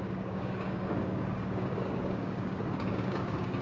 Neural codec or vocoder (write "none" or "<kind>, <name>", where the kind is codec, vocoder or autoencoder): codec, DAC